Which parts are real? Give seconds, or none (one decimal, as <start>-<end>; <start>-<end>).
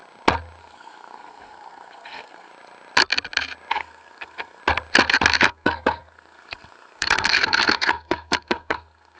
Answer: 0.0-0.6; 2.5-3.7; 4.6-5.5